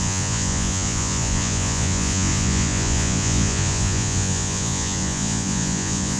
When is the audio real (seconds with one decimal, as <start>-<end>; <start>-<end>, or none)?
none